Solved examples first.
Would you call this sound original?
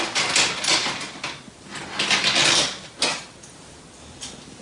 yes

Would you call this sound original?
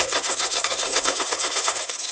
no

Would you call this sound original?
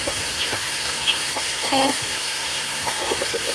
no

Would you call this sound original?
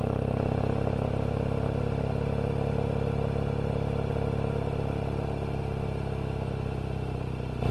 yes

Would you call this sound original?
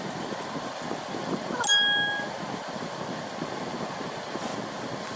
yes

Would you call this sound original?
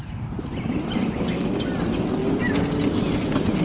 yes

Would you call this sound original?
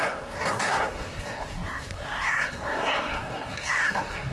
no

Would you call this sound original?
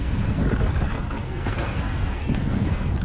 no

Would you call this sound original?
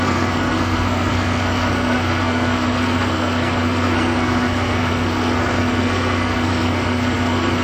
no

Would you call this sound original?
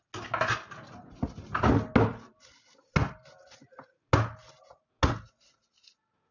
yes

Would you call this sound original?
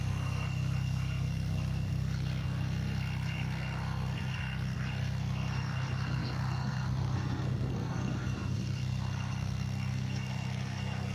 no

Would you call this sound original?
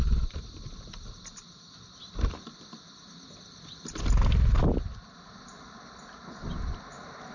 yes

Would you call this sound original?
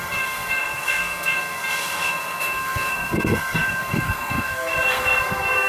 no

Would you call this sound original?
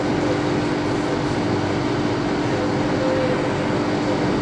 yes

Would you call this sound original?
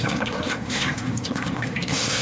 no